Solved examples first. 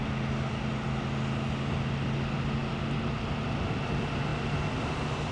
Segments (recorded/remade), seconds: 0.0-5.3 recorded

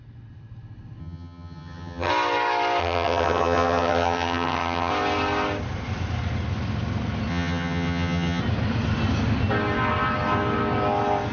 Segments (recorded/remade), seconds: 0.0-1.0 recorded; 1.0-2.1 remade; 2.1-2.8 recorded; 2.8-4.9 remade; 4.9-7.3 recorded; 7.3-8.4 remade; 8.4-11.3 recorded

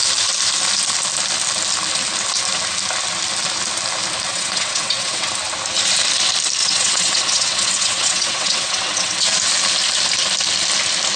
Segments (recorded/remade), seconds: 0.0-4.3 recorded; 4.3-5.3 remade; 5.3-6.6 recorded; 6.6-9.2 remade; 9.2-11.2 recorded

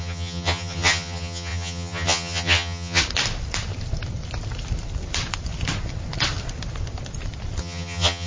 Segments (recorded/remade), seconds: 0.0-3.0 remade; 3.0-7.6 recorded; 7.6-8.3 remade